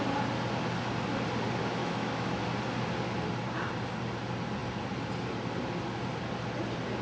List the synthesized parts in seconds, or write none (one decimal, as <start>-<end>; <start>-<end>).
1.8-2.4